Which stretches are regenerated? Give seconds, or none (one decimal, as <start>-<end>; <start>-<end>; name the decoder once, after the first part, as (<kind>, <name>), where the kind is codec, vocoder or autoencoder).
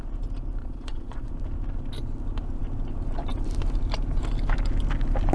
0.6-1.3 (vocoder, Vocos)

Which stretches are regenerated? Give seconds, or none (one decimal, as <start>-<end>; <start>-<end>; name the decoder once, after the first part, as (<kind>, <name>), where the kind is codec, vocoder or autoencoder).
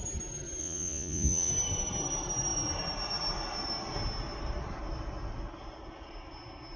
0.6-1.5 (vocoder, Vocos)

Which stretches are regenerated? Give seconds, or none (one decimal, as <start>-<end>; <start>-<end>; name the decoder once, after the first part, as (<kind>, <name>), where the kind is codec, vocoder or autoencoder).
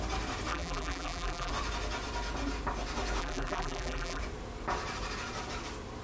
0.5-1.5 (vocoder, BigVGAN v2); 3.2-4.2